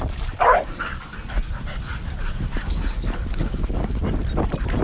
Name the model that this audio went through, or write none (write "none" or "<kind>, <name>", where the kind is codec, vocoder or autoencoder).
none